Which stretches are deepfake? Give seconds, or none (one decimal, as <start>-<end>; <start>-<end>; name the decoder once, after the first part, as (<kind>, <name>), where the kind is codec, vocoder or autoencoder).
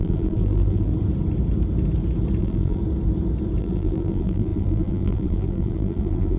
0.0-0.9 (vocoder, BigVGAN v2); 2.4-2.8; 3.6-6.4